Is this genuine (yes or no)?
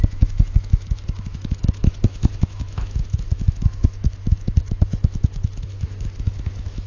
no